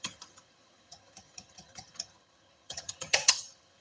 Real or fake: fake